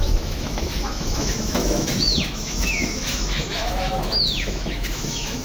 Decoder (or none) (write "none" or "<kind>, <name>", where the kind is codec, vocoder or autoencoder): autoencoder, DAC-VAE